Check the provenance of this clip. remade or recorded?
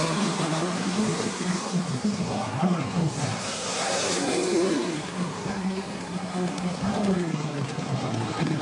remade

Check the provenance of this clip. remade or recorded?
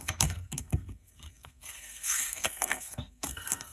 remade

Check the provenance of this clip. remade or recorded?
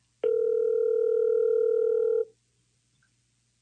recorded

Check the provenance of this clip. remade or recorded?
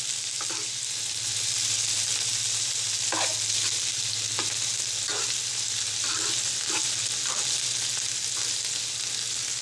recorded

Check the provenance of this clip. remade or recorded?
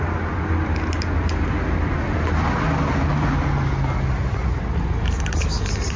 recorded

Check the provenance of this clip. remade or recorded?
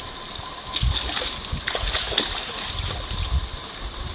recorded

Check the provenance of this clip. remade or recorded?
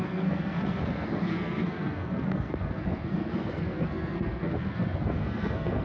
remade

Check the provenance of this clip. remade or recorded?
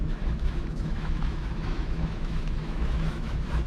remade